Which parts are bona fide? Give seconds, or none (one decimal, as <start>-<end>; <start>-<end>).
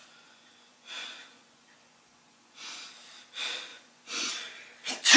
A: 2.9-3.7; 4.3-5.2